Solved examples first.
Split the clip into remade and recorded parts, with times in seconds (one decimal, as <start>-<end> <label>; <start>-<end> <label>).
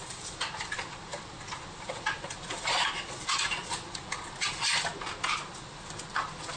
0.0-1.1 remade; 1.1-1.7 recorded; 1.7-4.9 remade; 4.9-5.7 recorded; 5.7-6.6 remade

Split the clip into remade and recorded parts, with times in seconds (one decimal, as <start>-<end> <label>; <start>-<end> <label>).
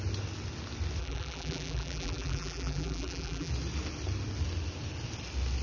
0.0-1.0 recorded; 1.0-3.5 remade; 3.5-5.6 recorded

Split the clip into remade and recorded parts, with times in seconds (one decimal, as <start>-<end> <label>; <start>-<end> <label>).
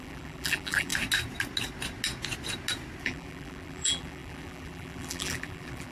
0.0-0.9 remade; 0.9-3.0 recorded; 3.0-5.9 remade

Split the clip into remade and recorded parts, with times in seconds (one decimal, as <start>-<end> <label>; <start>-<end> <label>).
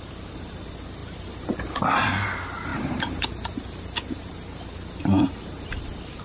0.0-1.0 recorded; 1.0-1.8 remade; 1.8-2.7 recorded; 2.7-5.8 remade; 5.8-6.2 recorded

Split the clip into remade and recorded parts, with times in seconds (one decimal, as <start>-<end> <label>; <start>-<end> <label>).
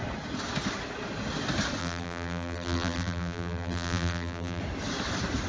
0.0-1.8 recorded; 1.8-4.6 remade; 4.6-5.5 recorded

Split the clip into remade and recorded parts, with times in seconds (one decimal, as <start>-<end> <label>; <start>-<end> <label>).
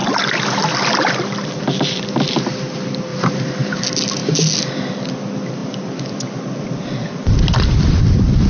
0.0-3.1 recorded; 3.1-3.8 remade; 3.8-8.5 recorded